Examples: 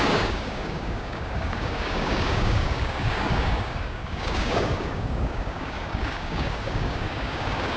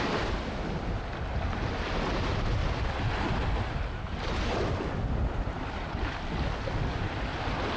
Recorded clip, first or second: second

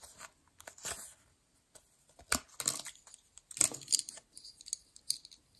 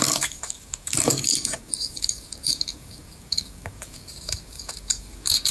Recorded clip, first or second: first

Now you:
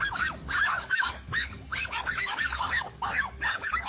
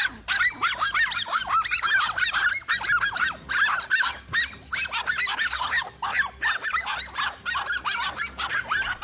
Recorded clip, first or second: second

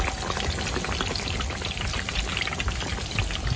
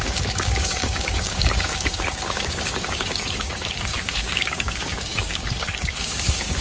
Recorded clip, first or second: first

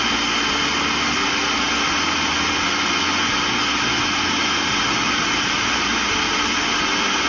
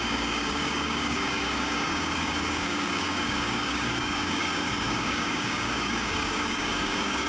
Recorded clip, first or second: first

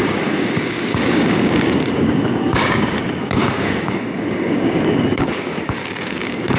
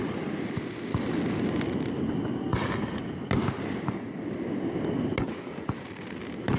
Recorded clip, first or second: second